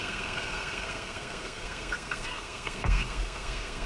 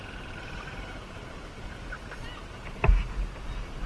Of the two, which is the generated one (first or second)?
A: first